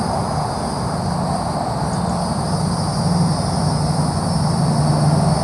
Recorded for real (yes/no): yes